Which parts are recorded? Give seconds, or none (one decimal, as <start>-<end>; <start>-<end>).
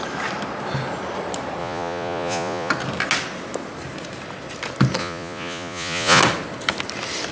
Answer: 0.0-1.6; 2.7-5.0; 6.2-7.3